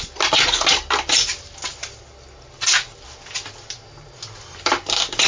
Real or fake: real